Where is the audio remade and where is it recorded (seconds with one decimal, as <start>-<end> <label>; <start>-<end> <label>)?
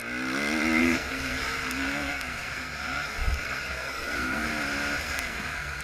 0.0-0.8 recorded; 0.8-4.5 remade; 4.5-5.0 recorded; 5.0-5.8 remade